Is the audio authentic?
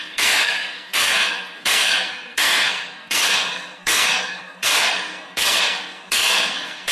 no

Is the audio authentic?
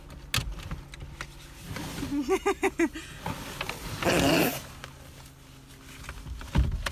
yes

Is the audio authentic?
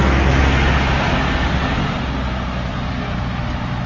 yes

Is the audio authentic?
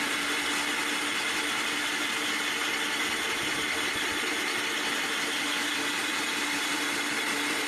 yes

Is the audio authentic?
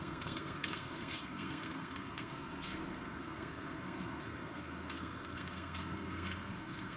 no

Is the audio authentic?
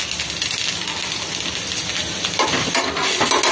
yes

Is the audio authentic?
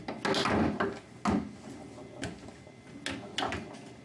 yes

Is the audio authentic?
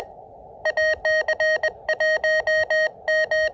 yes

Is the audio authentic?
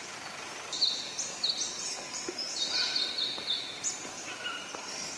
yes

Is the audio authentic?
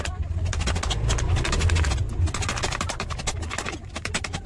yes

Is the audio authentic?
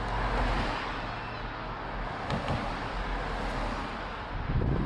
yes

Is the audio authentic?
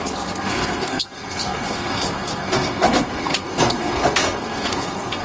no